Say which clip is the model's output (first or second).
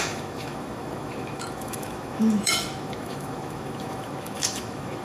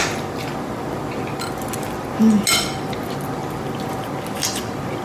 first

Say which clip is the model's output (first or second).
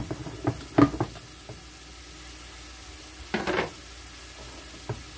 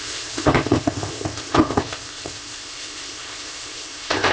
second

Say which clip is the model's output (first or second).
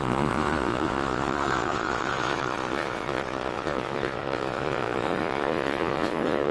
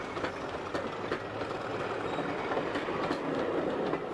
first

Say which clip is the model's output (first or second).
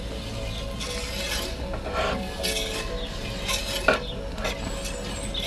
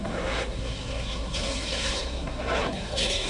second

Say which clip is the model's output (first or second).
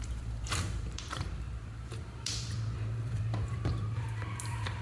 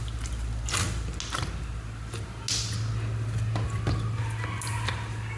first